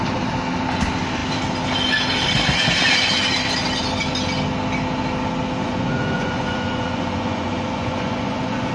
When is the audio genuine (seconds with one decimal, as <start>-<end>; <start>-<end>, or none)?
0.0-5.6